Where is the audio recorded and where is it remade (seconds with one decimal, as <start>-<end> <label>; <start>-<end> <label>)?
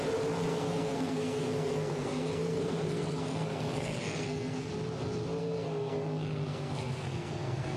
0.0-0.5 recorded; 0.5-4.7 remade; 4.7-5.4 recorded; 5.4-7.8 remade